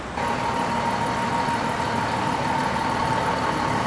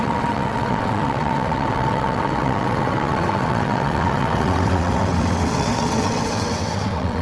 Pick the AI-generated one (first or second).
second